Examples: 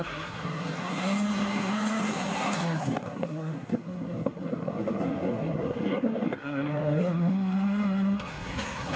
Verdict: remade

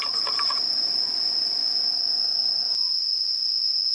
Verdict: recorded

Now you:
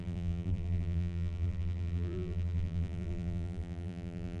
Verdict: remade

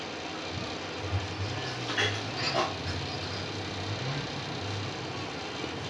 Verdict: recorded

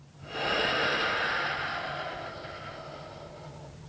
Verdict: recorded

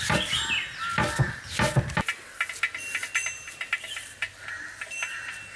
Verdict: recorded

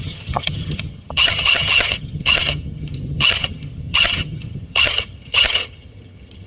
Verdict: remade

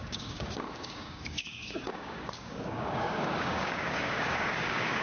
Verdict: remade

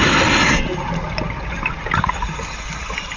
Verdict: recorded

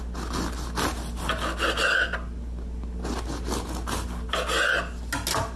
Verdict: recorded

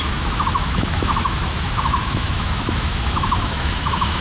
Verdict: remade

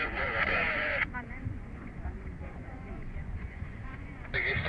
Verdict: remade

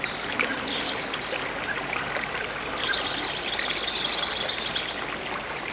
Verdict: recorded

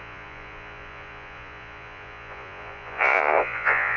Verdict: remade